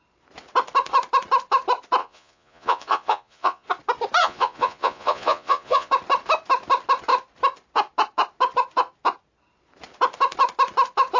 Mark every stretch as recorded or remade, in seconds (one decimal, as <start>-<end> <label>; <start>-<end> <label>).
0.0-2.0 recorded; 2.0-3.7 remade; 3.7-4.2 recorded; 4.2-5.9 remade; 5.9-11.2 recorded